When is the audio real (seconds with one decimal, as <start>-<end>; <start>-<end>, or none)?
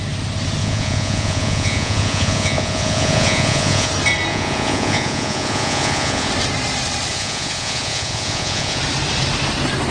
0.0-0.6; 3.9-4.3; 6.3-7.1; 8.8-9.9